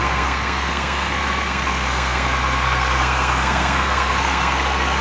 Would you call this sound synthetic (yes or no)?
yes